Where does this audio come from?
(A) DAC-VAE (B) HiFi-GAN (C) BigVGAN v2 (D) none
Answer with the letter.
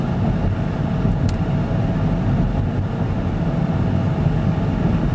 D